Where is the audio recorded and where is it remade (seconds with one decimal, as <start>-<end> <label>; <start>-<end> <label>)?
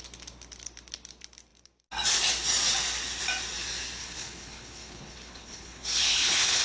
0.0-4.0 recorded; 4.0-6.6 remade